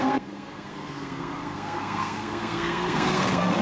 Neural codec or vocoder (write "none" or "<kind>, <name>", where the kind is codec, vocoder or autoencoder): codec, SNAC